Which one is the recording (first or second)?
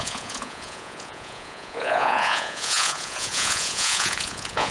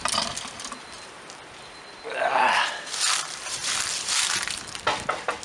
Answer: second